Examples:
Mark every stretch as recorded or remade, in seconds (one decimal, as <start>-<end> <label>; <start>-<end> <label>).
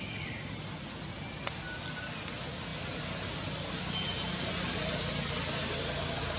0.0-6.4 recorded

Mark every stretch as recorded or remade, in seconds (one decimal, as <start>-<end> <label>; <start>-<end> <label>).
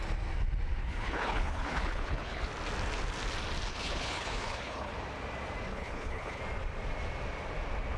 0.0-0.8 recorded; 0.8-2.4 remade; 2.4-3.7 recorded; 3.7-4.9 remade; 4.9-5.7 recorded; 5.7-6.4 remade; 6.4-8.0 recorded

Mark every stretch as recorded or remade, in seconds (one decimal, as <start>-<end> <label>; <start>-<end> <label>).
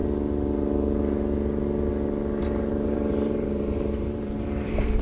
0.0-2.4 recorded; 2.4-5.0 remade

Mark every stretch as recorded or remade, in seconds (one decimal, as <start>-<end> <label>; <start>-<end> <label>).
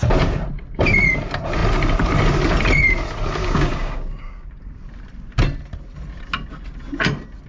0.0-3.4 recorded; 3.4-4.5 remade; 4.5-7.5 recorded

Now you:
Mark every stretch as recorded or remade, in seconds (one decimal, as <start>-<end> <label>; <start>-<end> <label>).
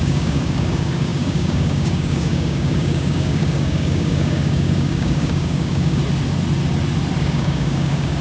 0.0-6.0 remade; 6.0-7.2 recorded; 7.2-8.2 remade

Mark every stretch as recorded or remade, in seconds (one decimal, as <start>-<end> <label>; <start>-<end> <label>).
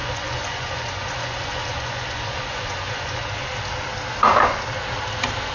0.0-3.3 remade; 3.3-5.5 recorded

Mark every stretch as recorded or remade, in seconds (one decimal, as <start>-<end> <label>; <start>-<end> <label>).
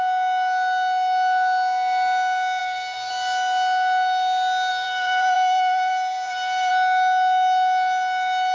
0.0-2.6 recorded; 2.6-3.1 remade; 3.1-4.7 recorded; 4.7-6.7 remade; 6.7-8.5 recorded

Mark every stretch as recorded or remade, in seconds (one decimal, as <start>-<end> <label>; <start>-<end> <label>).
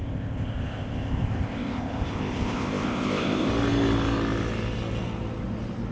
0.0-3.5 remade; 3.5-5.9 recorded